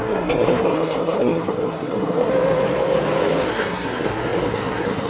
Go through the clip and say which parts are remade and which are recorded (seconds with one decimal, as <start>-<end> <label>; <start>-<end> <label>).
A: 0.0-2.3 remade; 2.3-3.5 recorded; 3.5-5.1 remade